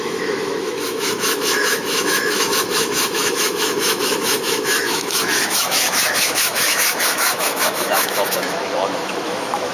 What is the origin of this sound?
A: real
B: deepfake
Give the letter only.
B